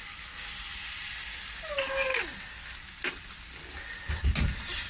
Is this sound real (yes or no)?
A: yes